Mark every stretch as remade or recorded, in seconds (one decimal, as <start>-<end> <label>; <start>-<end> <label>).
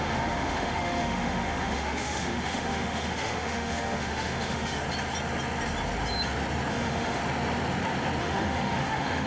0.0-4.8 remade; 4.8-6.7 recorded; 6.7-7.2 remade; 7.2-8.2 recorded; 8.2-9.3 remade